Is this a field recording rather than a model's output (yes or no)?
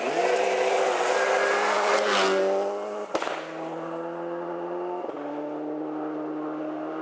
yes